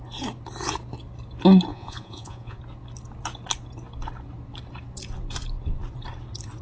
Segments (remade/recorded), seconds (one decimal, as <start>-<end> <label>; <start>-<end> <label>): 0.0-1.7 recorded; 1.7-2.6 remade; 2.6-6.6 recorded

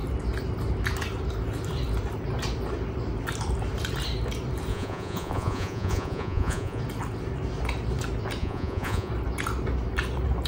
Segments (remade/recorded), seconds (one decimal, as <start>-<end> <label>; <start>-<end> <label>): 0.0-4.7 recorded; 4.7-6.8 remade; 6.8-8.4 recorded; 8.4-9.1 remade; 9.1-10.5 recorded

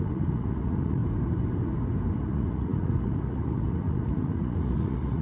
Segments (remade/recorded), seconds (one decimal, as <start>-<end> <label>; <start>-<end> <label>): 0.0-1.0 remade; 1.0-2.2 recorded; 2.2-5.2 remade